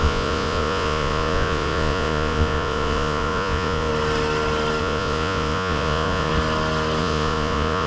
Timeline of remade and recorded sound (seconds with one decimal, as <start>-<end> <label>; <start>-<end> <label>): 0.0-3.9 remade; 3.9-4.8 recorded; 4.8-6.3 remade; 6.3-7.0 recorded; 7.0-7.9 remade